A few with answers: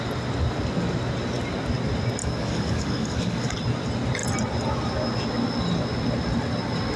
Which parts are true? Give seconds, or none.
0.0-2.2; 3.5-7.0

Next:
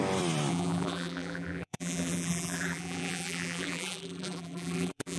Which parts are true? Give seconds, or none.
0.0-0.5